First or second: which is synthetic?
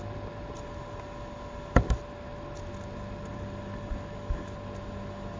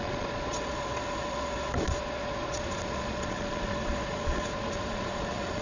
second